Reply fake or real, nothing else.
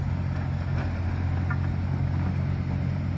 real